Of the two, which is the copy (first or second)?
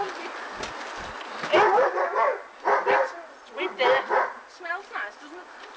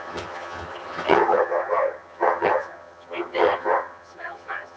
second